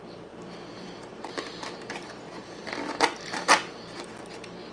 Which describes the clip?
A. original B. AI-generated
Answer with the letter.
B